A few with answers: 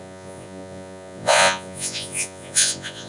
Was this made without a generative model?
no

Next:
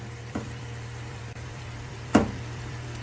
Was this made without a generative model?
no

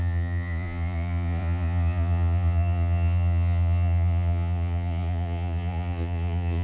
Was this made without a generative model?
no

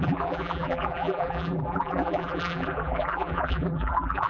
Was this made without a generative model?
no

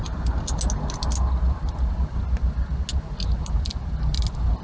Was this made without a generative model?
yes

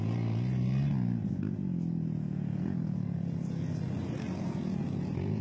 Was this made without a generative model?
yes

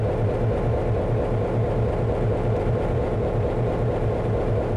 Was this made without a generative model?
no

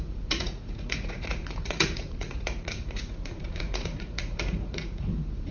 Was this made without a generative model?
no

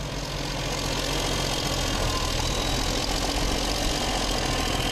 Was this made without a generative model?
yes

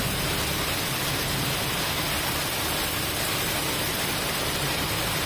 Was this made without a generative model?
yes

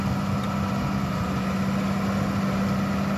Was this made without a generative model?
yes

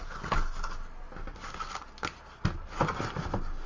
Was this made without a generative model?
yes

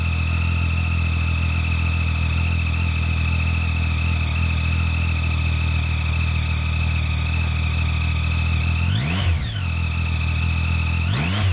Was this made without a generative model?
yes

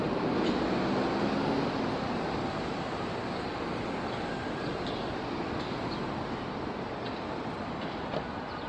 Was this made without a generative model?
yes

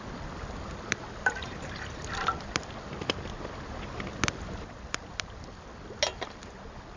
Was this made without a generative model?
yes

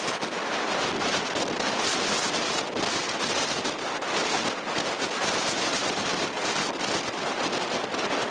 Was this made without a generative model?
yes